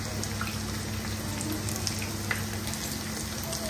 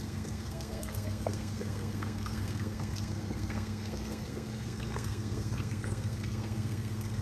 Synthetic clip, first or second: second